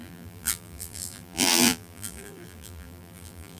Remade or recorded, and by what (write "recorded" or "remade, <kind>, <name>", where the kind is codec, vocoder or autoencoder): remade, vocoder, BigVGAN v2